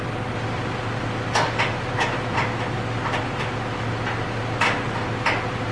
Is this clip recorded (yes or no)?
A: yes